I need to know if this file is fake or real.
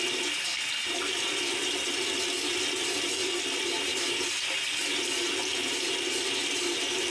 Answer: real